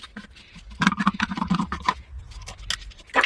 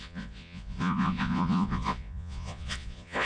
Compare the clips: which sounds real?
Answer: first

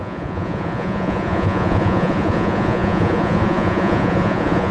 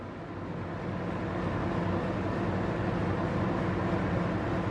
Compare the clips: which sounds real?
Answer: second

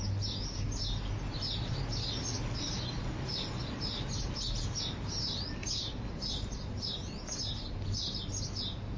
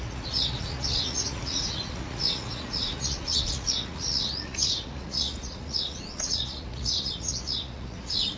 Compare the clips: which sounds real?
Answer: first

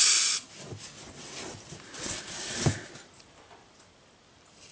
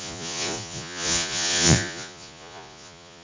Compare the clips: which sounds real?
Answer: first